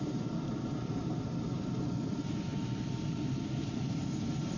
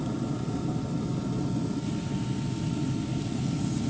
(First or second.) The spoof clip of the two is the first